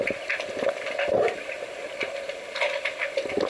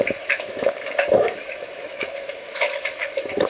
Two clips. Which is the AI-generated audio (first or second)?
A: second